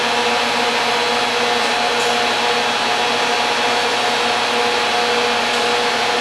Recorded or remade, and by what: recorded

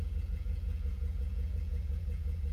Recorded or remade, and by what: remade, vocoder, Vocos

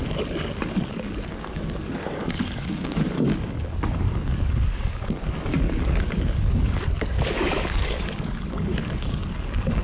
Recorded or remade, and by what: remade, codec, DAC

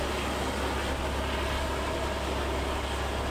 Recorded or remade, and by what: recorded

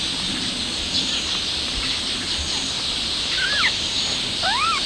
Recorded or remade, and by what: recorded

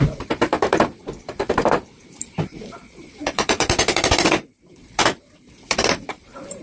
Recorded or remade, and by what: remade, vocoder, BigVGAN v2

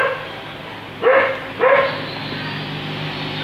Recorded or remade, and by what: recorded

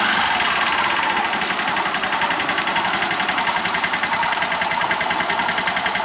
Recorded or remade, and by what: remade, vocoder, BigVGAN v2